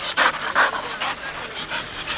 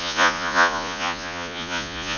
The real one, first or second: first